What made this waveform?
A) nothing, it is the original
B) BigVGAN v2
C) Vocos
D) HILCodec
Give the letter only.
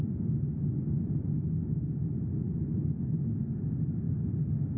A